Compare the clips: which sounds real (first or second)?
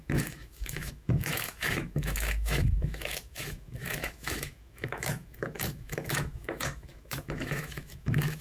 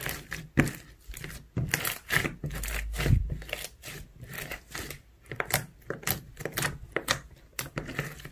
second